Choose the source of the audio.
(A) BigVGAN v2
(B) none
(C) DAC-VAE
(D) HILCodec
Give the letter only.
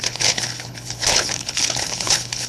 D